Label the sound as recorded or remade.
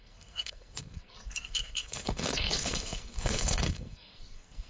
remade